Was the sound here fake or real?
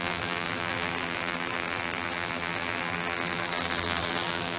fake